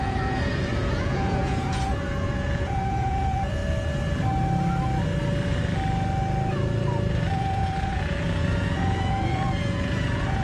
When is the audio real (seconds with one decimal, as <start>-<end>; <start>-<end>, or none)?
3.6-7.3

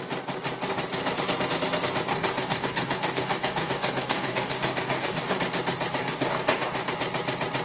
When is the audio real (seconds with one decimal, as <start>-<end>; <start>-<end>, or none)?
0.0-2.1; 5.4-6.0; 6.9-7.6

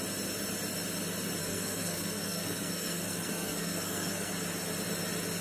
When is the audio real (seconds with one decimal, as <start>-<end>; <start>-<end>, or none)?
0.0-1.4; 4.3-5.4

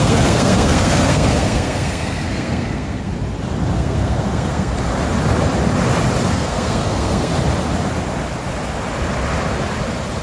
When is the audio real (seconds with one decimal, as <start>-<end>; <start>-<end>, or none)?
3.1-3.7; 4.7-6.3; 7.3-10.2